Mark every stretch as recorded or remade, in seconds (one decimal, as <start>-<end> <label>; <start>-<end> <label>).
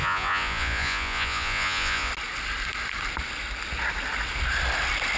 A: 0.0-2.1 remade; 2.1-5.2 recorded